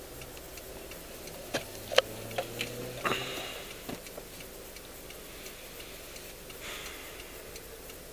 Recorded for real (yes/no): yes